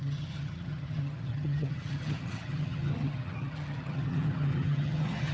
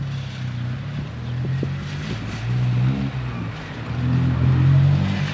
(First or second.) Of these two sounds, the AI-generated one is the first